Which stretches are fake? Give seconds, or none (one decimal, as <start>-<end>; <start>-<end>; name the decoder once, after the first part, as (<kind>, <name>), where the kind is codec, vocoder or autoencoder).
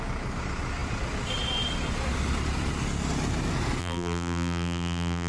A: 3.8-5.3 (vocoder, BigVGAN v2)